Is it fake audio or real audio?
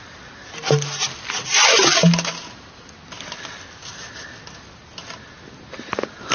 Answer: real